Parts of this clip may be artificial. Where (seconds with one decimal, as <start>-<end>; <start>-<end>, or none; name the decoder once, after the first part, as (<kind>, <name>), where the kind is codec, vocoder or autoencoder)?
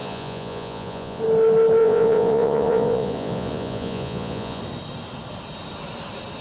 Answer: 0.0-1.2 (vocoder, Vocos); 1.8-4.6